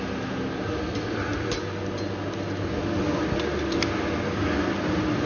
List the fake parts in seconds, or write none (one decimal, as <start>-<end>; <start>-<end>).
none

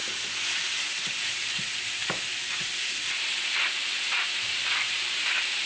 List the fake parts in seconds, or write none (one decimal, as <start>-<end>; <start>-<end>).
0.9-2.0; 4.2-5.7